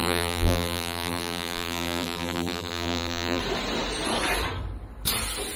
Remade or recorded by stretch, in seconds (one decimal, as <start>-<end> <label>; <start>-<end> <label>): 0.0-3.4 remade; 3.4-5.6 recorded